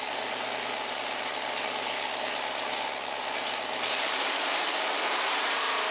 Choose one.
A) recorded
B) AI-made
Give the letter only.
A